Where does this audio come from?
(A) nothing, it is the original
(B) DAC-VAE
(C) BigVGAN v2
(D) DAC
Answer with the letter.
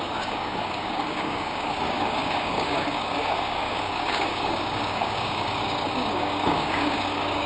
D